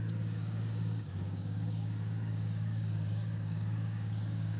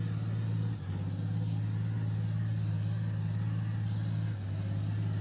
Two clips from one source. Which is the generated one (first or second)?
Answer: first